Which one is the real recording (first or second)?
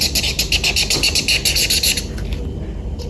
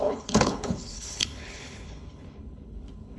first